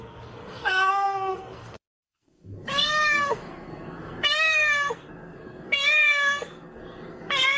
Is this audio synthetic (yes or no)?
yes